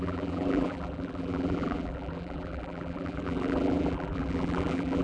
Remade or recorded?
remade